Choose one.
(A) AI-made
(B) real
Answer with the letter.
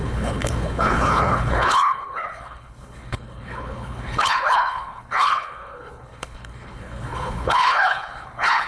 A